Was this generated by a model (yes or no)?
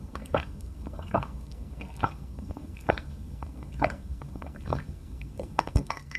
yes